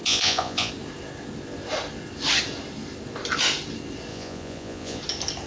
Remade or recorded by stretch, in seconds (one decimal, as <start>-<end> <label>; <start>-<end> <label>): 0.0-0.7 remade; 0.7-4.1 recorded; 4.1-5.0 remade; 5.0-5.5 recorded